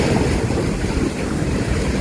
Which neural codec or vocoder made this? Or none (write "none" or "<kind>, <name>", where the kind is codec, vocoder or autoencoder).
none